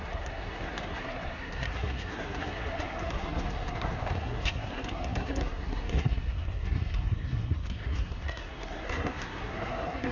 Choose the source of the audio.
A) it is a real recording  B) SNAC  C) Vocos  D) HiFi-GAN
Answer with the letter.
B